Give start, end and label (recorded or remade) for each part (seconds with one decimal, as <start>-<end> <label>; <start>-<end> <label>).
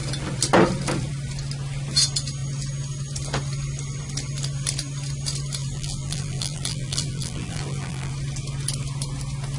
0.0-5.6 recorded; 5.6-8.1 remade; 8.1-9.6 recorded